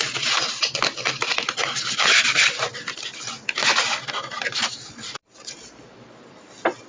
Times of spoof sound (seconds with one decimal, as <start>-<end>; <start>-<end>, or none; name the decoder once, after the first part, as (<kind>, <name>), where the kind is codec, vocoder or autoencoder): none